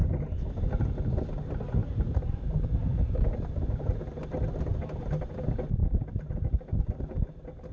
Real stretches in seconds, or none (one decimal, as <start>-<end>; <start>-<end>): 0.0-1.8; 4.0-5.8; 7.0-7.7